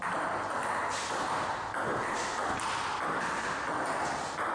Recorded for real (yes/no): yes